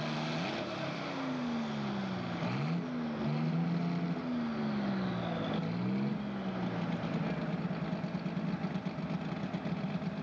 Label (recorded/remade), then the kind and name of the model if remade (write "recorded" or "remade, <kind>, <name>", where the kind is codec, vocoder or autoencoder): recorded